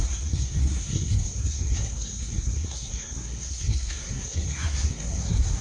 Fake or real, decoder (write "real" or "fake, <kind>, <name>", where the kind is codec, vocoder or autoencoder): fake, codec, SNAC